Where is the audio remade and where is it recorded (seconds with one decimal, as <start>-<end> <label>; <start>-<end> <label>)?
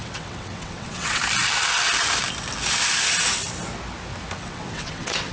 0.0-1.2 remade; 1.2-4.4 recorded; 4.4-5.3 remade